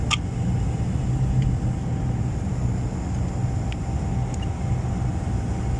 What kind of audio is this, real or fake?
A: real